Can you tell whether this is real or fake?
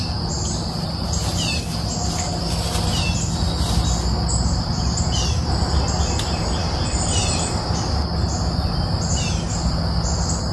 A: real